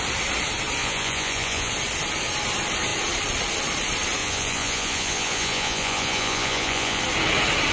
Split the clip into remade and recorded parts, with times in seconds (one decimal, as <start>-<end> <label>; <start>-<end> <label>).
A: 0.0-0.8 recorded; 0.8-1.7 remade; 1.7-4.2 recorded; 4.2-7.0 remade; 7.0-7.7 recorded